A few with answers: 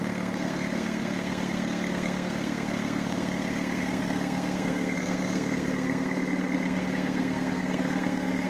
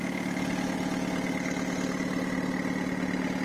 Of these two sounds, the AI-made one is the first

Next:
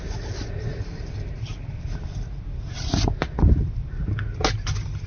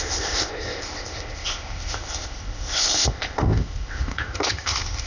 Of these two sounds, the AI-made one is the second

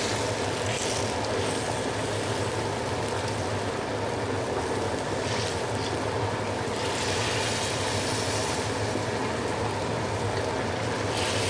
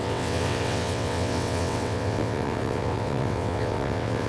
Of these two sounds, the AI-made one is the second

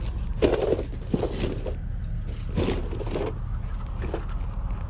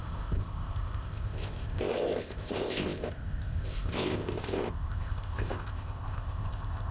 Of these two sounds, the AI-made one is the second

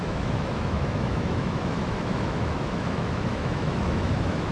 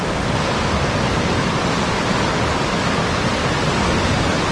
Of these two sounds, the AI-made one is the first